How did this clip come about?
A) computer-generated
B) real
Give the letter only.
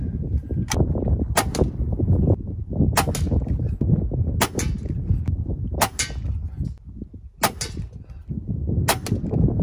B